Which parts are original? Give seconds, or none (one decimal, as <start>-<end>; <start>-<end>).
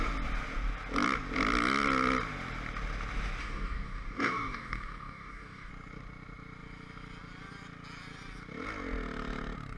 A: 0.0-3.4; 5.7-9.8